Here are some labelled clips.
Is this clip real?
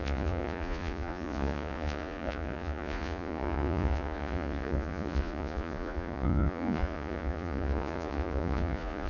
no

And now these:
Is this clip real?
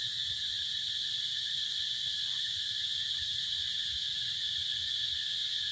yes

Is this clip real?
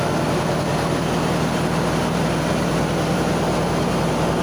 yes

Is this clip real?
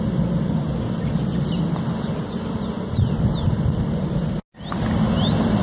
yes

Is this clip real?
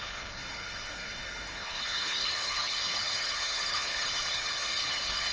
no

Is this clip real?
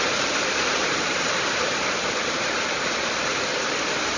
no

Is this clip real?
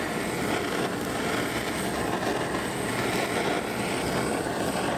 yes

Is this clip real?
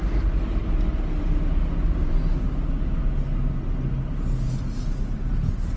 yes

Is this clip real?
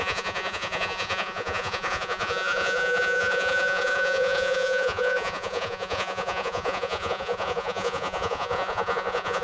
no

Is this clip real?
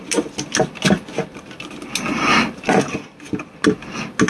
yes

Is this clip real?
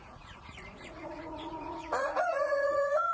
no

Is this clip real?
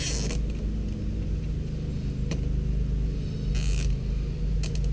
yes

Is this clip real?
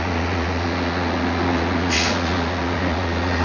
no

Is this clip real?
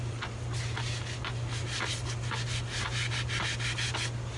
yes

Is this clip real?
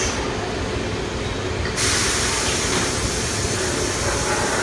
yes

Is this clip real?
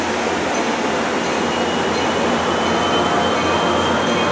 yes